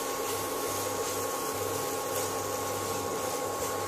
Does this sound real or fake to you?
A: real